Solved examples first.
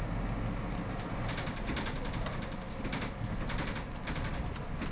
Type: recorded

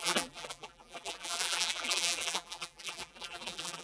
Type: remade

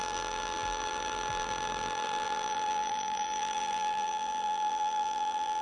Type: remade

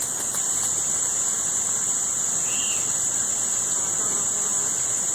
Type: recorded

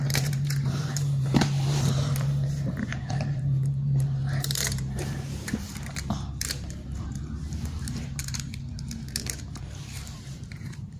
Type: remade